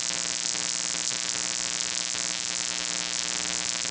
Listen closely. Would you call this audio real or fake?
real